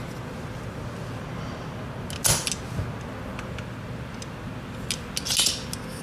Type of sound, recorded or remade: recorded